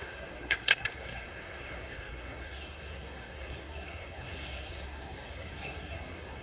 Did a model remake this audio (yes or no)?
yes